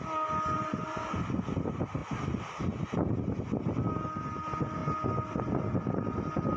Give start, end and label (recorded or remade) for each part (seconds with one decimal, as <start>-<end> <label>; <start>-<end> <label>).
0.0-6.6 recorded